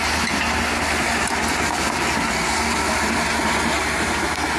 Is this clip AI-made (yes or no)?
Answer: no